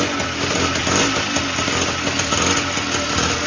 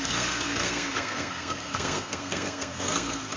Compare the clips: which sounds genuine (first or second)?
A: first